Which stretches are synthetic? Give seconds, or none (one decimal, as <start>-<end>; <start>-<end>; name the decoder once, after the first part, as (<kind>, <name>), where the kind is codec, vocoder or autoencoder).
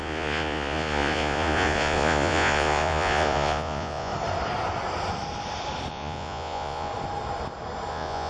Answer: 0.0-4.1 (vocoder, Vocos); 5.9-6.9; 7.9-8.3